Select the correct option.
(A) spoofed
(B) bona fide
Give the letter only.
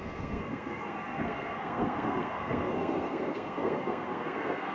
A